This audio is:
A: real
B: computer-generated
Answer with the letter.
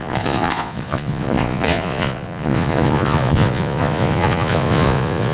B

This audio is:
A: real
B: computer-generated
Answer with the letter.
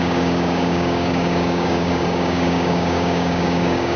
B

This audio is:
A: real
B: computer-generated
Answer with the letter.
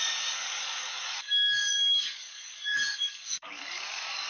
B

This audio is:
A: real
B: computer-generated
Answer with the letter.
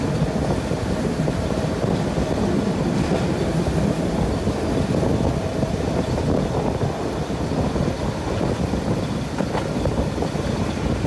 A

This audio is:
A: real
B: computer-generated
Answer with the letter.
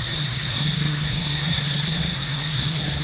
B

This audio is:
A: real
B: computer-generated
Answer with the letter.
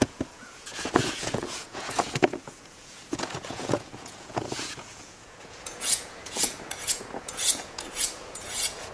B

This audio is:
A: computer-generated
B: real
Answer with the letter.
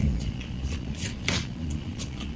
A